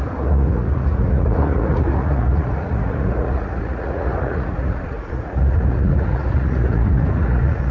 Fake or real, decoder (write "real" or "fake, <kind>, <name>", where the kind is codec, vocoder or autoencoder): fake, vocoder, Vocos